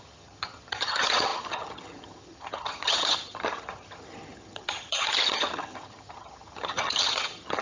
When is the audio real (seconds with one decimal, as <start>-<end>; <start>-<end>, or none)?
none